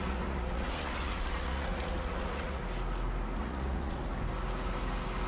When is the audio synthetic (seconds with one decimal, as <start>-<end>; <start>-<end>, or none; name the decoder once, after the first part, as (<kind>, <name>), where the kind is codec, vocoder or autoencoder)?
0.0-2.6 (vocoder, Vocos); 3.4-4.0